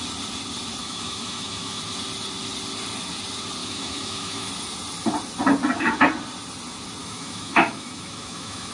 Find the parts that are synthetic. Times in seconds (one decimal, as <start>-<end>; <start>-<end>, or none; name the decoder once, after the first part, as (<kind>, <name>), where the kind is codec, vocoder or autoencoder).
0.8-1.8 (autoencoder, DAC-VAE); 3.6-4.5; 7.0-8.7